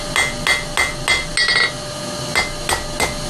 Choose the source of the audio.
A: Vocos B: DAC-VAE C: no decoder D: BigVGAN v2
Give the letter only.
C